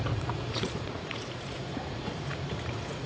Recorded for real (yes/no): no